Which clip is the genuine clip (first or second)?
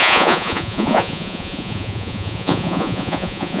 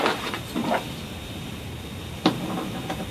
second